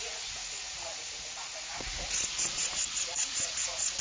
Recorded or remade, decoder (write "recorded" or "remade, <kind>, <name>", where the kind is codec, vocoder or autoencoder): remade, vocoder, Vocos